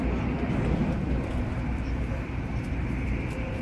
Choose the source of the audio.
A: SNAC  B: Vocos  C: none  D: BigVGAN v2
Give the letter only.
D